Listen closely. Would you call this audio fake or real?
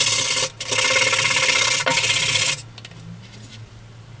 real